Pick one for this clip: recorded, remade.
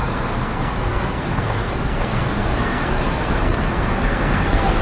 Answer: remade